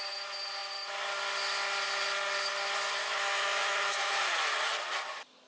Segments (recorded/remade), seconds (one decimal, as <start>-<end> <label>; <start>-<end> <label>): 0.0-3.0 recorded; 3.0-4.3 remade; 4.3-5.5 recorded